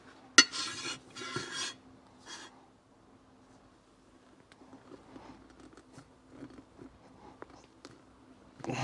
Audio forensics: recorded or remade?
recorded